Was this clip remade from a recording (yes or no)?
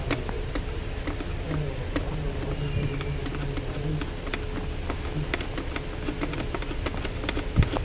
no